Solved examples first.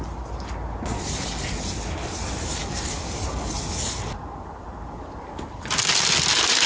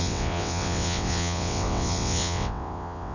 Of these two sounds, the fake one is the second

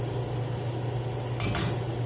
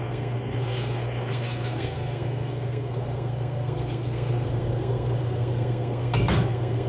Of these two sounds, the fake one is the second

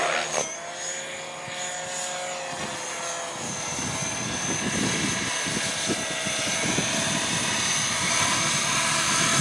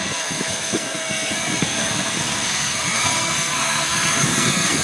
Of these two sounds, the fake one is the second